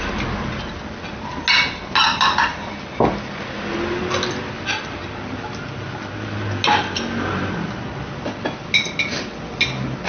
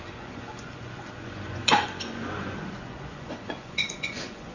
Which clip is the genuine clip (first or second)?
first